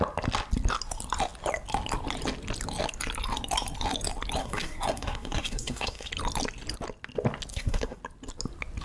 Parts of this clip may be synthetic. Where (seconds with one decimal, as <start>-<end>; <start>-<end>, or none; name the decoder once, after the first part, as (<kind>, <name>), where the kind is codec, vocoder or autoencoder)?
4.4-6.1 (codec, SNAC); 7.5-8.0